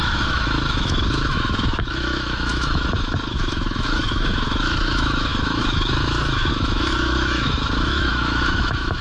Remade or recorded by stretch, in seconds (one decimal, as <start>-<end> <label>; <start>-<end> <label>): 0.0-9.0 remade